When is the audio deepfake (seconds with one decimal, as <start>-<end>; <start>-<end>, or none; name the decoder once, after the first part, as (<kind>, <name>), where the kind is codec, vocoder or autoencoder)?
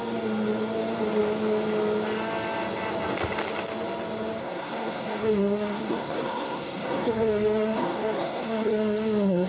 4.4-9.5 (codec, SNAC)